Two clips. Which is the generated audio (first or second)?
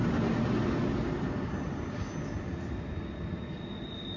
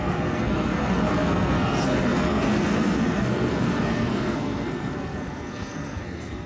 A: second